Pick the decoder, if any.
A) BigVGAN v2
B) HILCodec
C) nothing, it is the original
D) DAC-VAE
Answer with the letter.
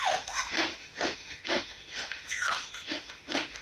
D